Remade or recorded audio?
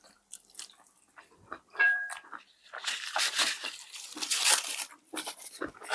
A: remade